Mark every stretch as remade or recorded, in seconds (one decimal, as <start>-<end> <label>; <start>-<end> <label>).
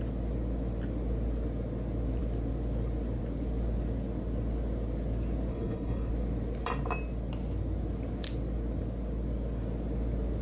0.0-5.5 recorded; 5.5-6.1 remade; 6.1-10.4 recorded